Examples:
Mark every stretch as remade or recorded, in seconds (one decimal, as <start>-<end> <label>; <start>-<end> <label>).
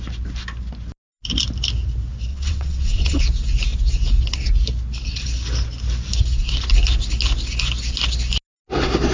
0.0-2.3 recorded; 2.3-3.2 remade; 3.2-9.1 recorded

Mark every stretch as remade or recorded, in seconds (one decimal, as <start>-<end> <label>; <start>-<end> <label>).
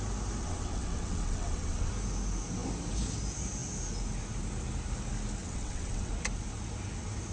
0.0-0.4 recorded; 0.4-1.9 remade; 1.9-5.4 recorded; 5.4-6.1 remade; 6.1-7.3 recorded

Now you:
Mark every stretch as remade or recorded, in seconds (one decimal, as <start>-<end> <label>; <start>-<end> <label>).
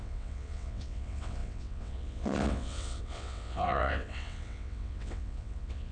0.0-5.9 remade